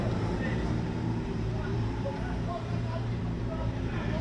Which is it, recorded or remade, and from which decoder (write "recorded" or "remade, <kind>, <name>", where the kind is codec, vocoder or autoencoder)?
remade, vocoder, BigVGAN v2